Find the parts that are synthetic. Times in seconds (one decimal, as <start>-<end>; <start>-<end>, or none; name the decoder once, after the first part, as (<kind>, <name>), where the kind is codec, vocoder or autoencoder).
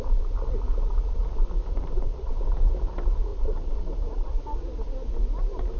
1.7-2.3 (vocoder, BigVGAN v2); 3.3-4.3